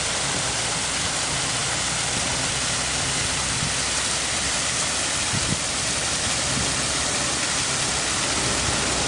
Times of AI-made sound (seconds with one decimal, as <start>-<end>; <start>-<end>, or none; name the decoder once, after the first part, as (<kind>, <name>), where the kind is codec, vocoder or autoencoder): none